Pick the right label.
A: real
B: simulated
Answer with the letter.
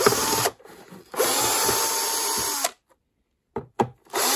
A